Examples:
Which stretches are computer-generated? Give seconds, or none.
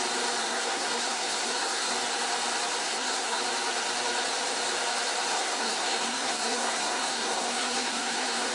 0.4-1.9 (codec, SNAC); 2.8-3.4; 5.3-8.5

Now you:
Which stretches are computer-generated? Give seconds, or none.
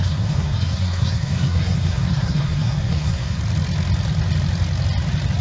0.0-3.4 (codec, SNAC)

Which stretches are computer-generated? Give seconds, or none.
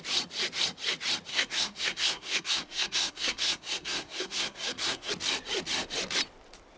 1.3-5.1 (codec, SNAC)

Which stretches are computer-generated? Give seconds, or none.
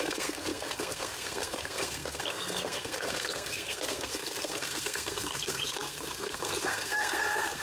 0.0-7.6 (codec, SNAC)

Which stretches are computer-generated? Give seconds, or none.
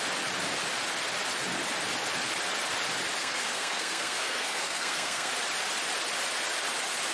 3.2-5.3 (codec, SNAC)